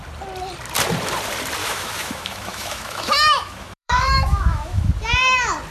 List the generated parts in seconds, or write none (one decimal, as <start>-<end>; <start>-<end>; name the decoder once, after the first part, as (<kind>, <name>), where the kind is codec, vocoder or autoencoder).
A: 1.6-4.9 (autoencoder, DAC-VAE)